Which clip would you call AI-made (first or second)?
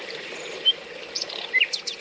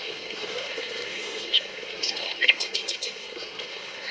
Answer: second